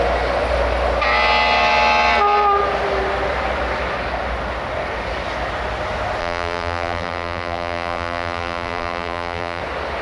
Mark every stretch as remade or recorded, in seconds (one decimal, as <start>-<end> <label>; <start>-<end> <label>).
0.0-6.2 recorded; 6.2-9.6 remade; 9.6-10.0 recorded